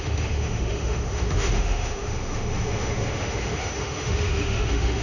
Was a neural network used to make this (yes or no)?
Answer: yes